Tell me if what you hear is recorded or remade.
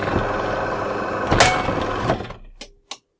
recorded